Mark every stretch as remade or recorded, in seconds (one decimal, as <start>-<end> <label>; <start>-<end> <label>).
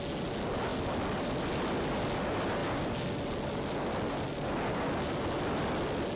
0.0-6.2 recorded